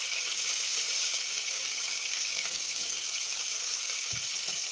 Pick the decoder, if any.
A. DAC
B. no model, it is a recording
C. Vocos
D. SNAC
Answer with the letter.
A